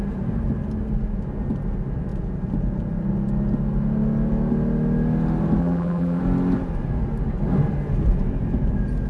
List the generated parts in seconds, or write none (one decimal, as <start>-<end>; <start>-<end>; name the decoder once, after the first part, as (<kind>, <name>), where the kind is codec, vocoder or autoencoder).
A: 5.6-6.2 (vocoder, BigVGAN v2)